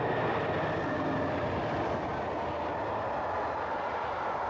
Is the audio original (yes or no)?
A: yes